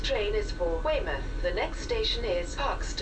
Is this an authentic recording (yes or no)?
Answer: yes